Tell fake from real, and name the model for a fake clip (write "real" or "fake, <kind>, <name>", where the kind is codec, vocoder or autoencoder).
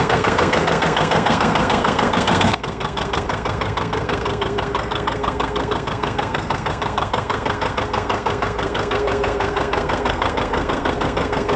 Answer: fake, codec, SNAC